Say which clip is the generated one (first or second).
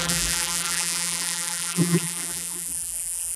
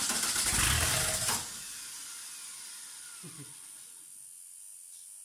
first